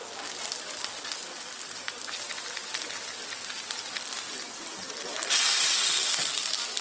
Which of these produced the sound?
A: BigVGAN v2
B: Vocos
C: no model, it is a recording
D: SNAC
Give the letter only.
C